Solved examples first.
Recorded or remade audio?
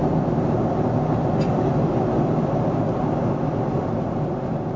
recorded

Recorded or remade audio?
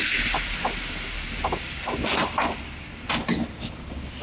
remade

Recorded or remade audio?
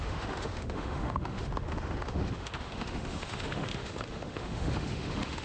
remade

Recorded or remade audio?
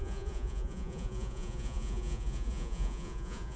remade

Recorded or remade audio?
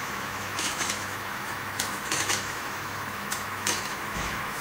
remade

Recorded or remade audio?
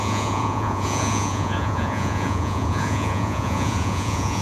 remade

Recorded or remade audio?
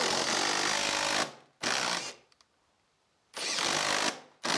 recorded